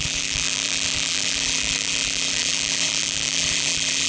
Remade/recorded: remade